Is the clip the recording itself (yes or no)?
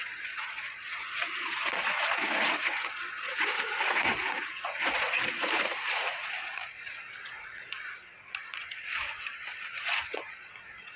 no